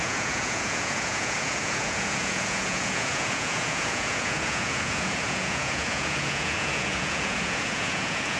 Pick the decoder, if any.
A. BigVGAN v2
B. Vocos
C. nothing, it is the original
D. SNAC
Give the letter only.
B